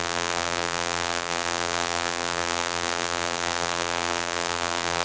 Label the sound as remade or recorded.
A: remade